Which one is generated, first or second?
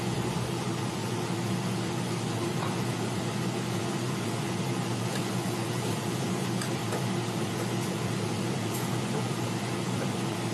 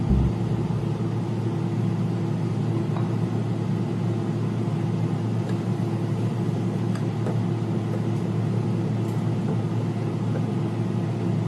first